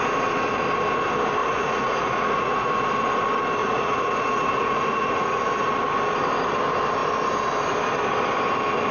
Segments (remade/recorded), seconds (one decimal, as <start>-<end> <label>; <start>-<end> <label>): 0.0-1.4 recorded; 1.4-2.7 remade; 2.7-3.6 recorded; 3.6-5.4 remade; 5.4-8.9 recorded